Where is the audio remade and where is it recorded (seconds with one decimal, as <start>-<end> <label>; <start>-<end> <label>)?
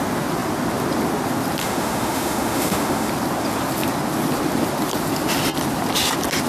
0.0-1.6 recorded; 1.6-3.1 remade; 3.1-6.5 recorded